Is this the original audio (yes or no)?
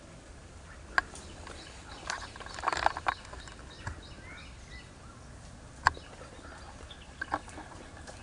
yes